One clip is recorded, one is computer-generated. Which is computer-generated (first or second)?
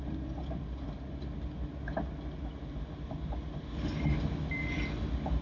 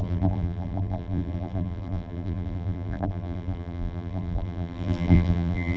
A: second